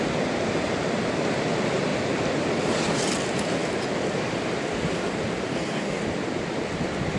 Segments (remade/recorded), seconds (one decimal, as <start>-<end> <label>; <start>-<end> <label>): 0.0-5.5 recorded; 5.5-6.0 remade; 6.0-7.2 recorded